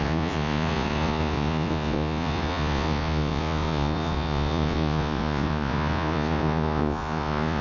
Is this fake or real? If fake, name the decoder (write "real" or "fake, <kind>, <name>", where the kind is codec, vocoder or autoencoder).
fake, vocoder, Vocos